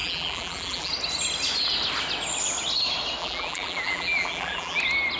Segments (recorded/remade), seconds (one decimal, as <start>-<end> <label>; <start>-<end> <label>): 0.0-0.9 remade; 0.9-3.2 recorded; 3.2-4.8 remade; 4.8-5.2 recorded